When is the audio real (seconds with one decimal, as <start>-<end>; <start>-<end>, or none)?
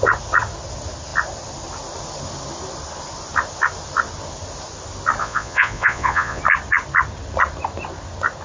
0.0-5.2; 6.4-8.4